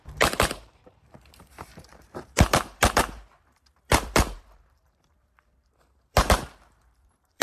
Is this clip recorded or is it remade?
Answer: remade